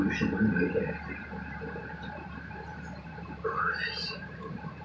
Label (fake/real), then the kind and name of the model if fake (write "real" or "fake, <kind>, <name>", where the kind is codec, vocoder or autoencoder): fake, vocoder, BigVGAN v2